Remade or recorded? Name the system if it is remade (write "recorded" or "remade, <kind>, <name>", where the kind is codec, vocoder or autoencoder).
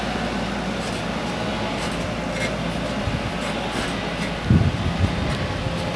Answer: recorded